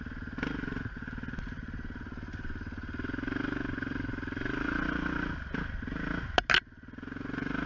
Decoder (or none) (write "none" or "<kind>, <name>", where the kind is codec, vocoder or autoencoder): none